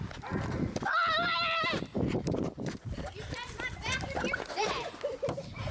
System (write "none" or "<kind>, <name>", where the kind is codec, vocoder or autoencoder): none